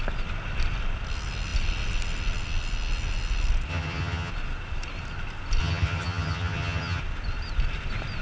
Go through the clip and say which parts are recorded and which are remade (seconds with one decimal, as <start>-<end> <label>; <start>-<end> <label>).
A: 0.0-3.7 recorded; 3.7-4.3 remade; 4.3-5.6 recorded; 5.6-7.0 remade; 7.0-8.2 recorded